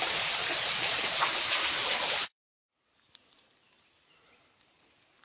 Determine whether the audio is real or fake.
fake